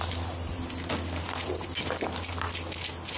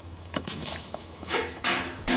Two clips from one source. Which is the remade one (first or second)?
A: second